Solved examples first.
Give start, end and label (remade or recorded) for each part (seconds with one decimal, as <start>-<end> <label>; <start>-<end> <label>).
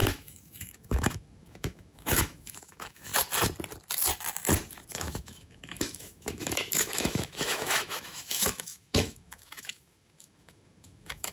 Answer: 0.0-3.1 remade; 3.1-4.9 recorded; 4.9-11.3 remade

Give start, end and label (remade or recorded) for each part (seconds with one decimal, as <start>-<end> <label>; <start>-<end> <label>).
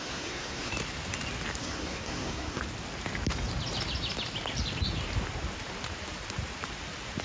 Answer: 0.0-0.7 remade; 0.7-1.6 recorded; 1.6-2.6 remade; 2.6-7.2 recorded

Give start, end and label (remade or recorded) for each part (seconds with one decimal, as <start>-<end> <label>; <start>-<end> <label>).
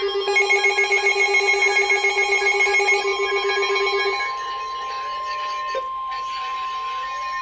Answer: 0.0-7.4 recorded